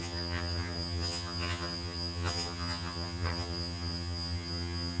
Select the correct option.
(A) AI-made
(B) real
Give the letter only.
A